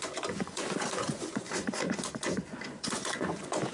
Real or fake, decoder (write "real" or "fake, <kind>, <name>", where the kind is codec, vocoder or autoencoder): fake, vocoder, Vocos